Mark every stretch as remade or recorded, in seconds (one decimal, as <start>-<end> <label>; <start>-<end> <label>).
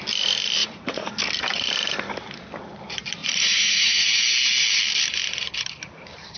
0.0-0.6 recorded; 0.6-1.1 remade; 1.1-3.2 recorded; 3.2-4.1 remade; 4.1-6.4 recorded